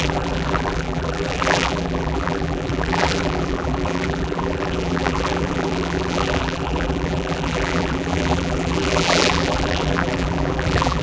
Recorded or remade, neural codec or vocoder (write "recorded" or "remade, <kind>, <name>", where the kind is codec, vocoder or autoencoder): remade, vocoder, BigVGAN v2